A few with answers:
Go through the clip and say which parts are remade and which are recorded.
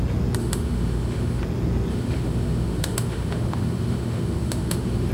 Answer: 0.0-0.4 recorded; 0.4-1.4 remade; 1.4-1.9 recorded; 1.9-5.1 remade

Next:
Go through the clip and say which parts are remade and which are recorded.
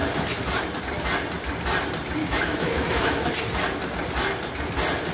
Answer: 0.0-2.2 recorded; 2.2-3.3 remade; 3.3-5.1 recorded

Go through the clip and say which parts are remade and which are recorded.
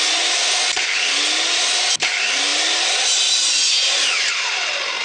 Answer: 0.0-5.0 recorded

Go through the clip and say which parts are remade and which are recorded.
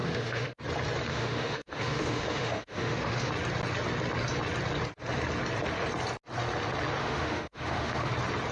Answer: 0.0-0.6 remade; 0.6-1.1 recorded; 1.1-3.3 remade; 3.3-7.0 recorded; 7.0-8.1 remade; 8.1-8.5 recorded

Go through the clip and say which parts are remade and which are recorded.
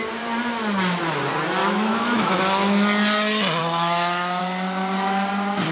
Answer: 0.0-1.6 recorded; 1.6-2.4 remade; 2.4-3.6 recorded; 3.6-4.4 remade; 4.4-5.7 recorded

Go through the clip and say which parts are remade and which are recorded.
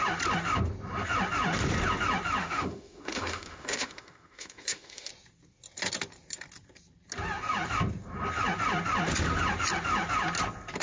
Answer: 0.0-2.4 recorded; 2.4-5.1 remade; 5.1-10.8 recorded